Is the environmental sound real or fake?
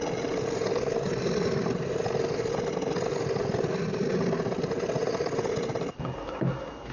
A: real